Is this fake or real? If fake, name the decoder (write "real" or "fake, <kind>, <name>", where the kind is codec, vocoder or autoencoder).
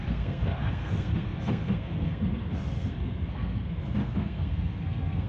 fake, codec, SNAC